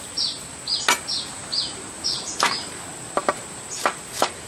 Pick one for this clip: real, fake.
fake